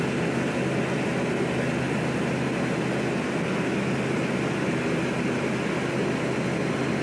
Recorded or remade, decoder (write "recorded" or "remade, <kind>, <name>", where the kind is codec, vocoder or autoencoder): recorded